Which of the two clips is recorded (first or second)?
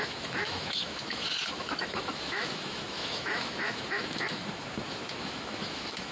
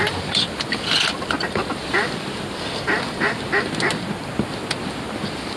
second